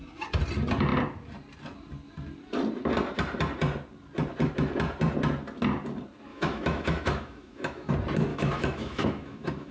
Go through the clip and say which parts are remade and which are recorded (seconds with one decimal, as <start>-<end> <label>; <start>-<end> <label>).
0.0-6.3 recorded; 6.3-7.9 remade; 7.9-8.3 recorded; 8.3-9.7 remade